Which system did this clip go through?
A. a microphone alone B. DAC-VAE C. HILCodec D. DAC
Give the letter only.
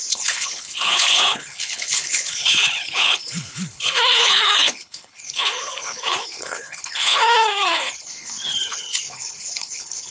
C